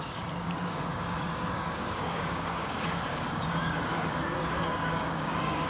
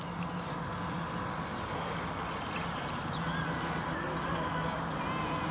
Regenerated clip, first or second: first